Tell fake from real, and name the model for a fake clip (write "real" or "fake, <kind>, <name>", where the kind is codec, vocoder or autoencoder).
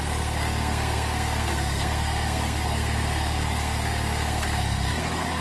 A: fake, codec, SNAC